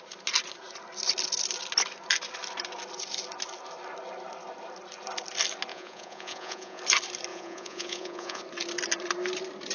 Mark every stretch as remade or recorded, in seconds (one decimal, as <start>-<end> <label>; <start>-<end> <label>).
0.0-5.7 recorded; 5.7-6.8 remade; 6.8-7.3 recorded; 7.3-8.4 remade; 8.4-9.7 recorded

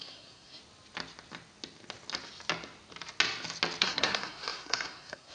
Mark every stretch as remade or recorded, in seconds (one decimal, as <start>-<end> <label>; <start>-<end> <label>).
0.0-0.6 remade; 0.6-3.8 recorded; 3.8-5.3 remade

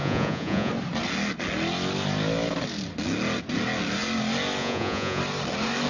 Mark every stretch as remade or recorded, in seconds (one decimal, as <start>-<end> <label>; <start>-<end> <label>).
0.0-0.7 remade; 0.7-4.6 recorded; 4.6-5.2 remade; 5.2-5.9 recorded

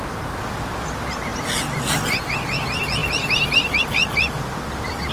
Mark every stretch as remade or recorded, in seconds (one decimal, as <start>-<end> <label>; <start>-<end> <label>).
0.0-5.1 recorded

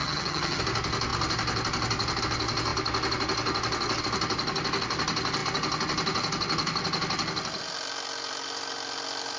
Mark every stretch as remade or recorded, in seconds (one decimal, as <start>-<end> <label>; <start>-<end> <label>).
0.0-0.6 remade; 0.6-9.4 recorded

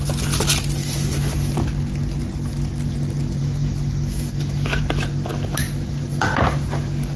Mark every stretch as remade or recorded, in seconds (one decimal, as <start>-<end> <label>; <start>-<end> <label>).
0.0-0.8 recorded; 0.8-1.5 remade; 1.5-3.4 recorded; 3.4-4.8 remade; 4.8-7.2 recorded